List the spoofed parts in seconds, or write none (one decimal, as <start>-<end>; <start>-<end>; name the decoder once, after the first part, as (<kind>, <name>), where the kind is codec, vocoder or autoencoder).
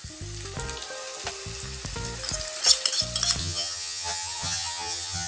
3.4-5.3 (vocoder, HiFi-GAN)